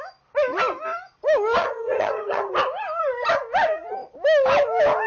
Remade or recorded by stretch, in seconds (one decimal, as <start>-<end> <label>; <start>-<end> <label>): 0.0-1.6 recorded; 1.6-2.5 remade; 2.5-5.1 recorded